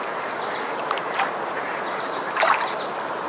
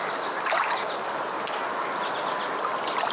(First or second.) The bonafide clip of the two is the second